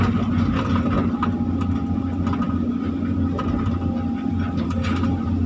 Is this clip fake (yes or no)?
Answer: no